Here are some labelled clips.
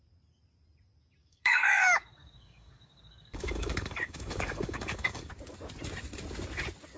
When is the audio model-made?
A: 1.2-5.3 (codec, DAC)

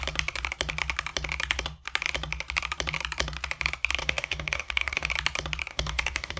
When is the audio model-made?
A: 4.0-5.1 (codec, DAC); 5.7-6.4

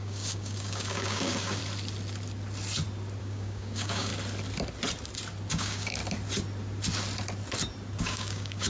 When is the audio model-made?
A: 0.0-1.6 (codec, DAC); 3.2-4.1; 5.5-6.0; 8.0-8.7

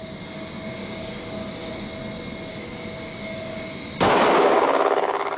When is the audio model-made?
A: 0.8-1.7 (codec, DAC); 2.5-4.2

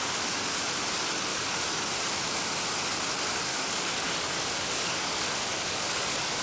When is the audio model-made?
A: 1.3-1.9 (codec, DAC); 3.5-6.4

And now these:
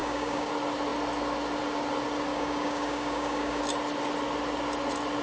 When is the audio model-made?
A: 0.0-0.5 (codec, DAC); 2.3-3.6

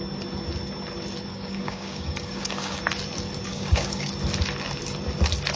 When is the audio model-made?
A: 1.3-2.8 (codec, DAC); 3.5-4.1

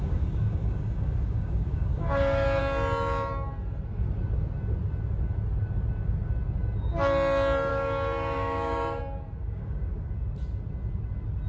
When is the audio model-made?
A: 0.0-2.6 (codec, DAC); 7.7-9.0; 9.4-10.1